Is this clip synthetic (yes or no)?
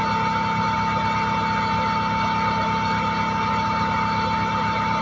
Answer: no